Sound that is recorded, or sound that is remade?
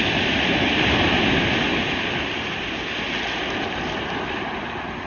recorded